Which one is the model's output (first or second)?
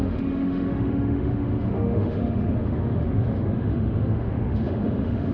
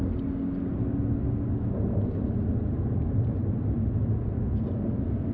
first